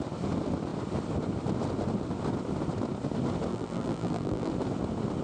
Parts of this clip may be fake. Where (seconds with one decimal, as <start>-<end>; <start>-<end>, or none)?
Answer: 3.5-4.5